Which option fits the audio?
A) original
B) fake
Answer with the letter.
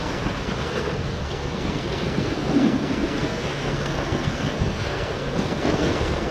B